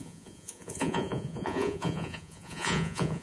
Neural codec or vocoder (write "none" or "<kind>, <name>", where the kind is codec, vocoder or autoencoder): vocoder, Vocos